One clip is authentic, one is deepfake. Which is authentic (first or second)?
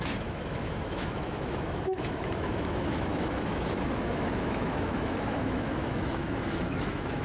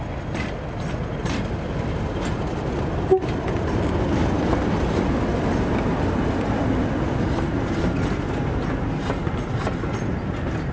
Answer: second